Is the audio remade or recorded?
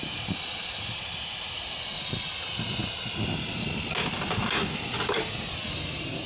recorded